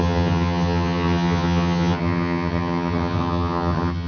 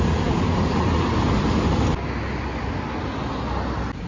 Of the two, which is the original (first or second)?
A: second